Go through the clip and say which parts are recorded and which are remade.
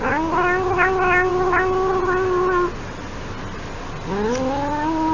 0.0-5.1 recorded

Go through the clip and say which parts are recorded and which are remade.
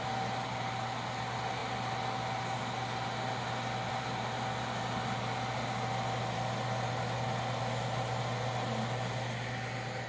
0.0-10.1 recorded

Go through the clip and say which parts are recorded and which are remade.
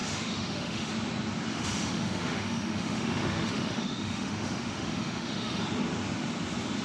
0.0-0.9 remade; 0.9-1.5 recorded; 1.5-5.6 remade; 5.6-6.8 recorded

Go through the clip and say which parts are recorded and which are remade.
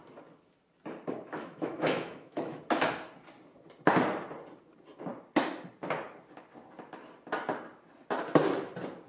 0.0-1.3 recorded; 1.3-2.6 remade; 2.6-9.1 recorded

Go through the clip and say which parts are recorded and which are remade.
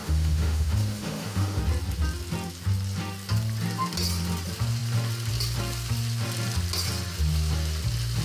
0.0-1.6 remade; 1.6-8.2 recorded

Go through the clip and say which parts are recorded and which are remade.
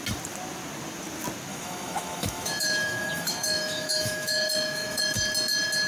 0.0-1.5 recorded; 1.5-5.0 remade; 5.0-5.9 recorded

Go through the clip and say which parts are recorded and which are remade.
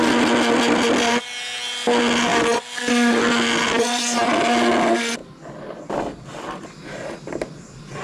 0.0-8.0 recorded